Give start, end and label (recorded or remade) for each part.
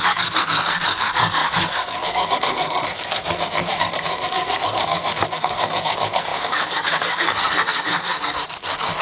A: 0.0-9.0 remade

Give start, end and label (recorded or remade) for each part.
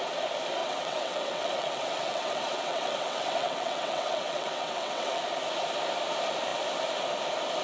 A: 0.0-0.6 recorded; 0.6-5.2 remade; 5.2-7.6 recorded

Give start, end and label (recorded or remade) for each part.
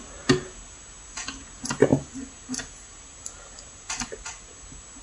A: 0.0-5.0 recorded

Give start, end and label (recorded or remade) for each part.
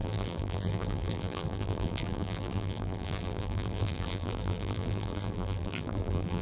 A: 0.0-6.4 remade